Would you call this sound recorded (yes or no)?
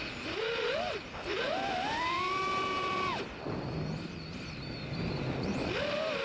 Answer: yes